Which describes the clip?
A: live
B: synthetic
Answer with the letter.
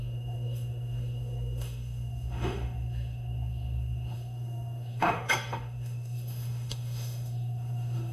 B